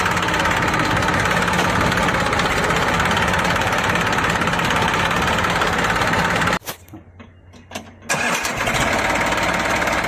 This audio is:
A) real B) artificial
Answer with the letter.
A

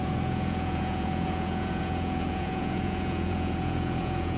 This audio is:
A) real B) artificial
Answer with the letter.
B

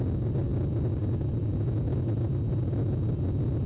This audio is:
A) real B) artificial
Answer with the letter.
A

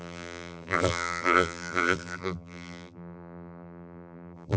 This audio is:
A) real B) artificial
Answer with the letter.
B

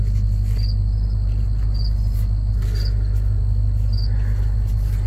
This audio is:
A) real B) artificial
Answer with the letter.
A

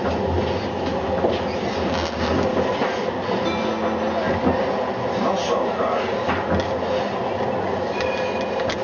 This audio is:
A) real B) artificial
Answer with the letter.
A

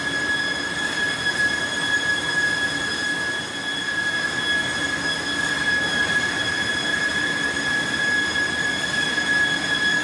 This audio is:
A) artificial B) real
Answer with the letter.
B